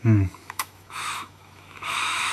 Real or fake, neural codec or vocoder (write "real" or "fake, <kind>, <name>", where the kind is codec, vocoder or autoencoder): fake, autoencoder, DAC-VAE